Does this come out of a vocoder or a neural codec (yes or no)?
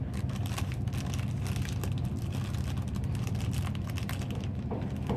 no